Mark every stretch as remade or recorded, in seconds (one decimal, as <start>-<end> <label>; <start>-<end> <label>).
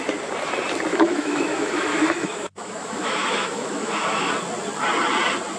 0.0-0.9 recorded; 0.9-4.3 remade; 4.3-5.6 recorded